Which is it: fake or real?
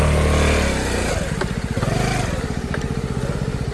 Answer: real